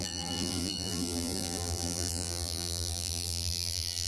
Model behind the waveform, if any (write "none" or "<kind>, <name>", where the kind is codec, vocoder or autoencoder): vocoder, BigVGAN v2